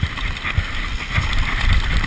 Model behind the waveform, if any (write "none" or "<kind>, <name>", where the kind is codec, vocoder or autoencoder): none